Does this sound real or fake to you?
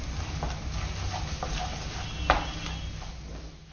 real